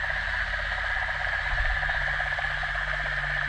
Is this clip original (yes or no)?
yes